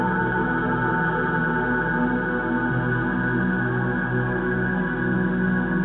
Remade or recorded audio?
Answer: recorded